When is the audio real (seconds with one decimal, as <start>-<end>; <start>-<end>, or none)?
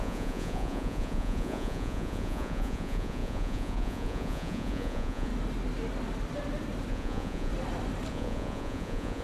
5.3-6.9; 7.5-8.1